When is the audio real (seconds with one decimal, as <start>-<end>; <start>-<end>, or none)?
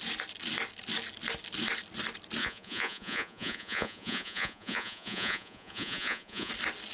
0.0-2.4; 6.5-6.9